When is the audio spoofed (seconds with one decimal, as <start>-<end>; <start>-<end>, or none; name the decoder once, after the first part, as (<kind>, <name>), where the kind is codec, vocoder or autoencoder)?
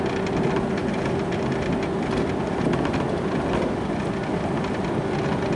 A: none